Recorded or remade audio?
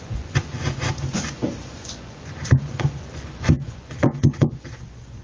remade